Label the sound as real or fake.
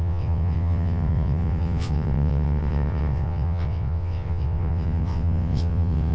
fake